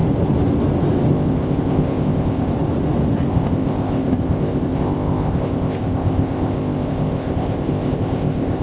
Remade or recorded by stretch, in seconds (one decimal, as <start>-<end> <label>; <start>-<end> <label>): 0.0-1.1 recorded; 1.1-2.5 remade; 2.5-3.3 recorded; 3.3-8.6 remade